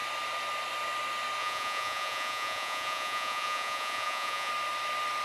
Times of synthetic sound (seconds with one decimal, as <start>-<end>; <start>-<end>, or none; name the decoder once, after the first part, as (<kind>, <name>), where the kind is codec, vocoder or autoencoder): 1.4-4.5 (vocoder, Vocos)